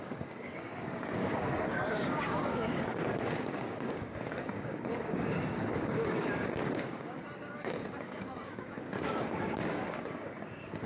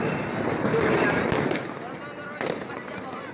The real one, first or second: second